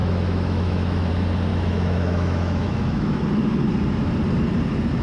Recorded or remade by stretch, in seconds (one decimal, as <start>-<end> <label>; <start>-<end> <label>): 0.0-1.1 remade; 1.1-1.5 recorded; 1.5-3.2 remade; 3.2-5.0 recorded